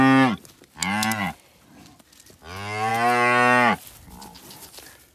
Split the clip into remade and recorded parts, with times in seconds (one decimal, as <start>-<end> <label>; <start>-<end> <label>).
0.0-5.1 recorded